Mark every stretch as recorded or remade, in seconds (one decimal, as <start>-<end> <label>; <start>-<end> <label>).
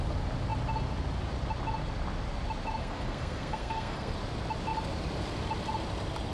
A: 0.0-2.8 recorded; 2.8-4.1 remade; 4.1-6.3 recorded